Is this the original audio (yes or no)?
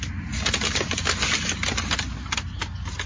yes